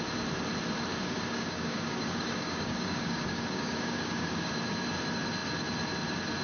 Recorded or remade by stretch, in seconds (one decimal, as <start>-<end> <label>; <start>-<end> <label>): 0.0-0.9 recorded; 0.9-4.5 remade; 4.5-6.4 recorded